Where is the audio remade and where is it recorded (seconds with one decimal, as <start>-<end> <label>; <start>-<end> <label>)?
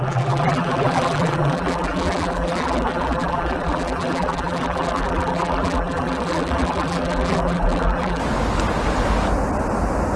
0.0-8.2 remade; 8.2-10.2 recorded